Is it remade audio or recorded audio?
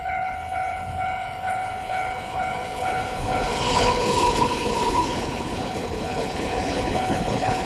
remade